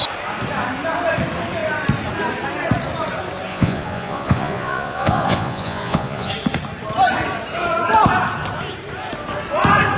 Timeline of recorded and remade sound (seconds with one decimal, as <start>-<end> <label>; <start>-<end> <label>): 0.0-3.5 recorded; 3.5-6.3 remade; 6.3-10.0 recorded